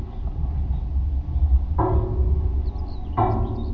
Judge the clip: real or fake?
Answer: real